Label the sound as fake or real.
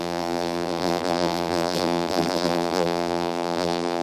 fake